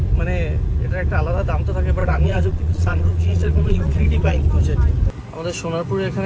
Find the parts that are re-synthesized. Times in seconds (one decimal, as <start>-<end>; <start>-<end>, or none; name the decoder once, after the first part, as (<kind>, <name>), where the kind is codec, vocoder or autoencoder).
2.0-4.4 (vocoder, Vocos)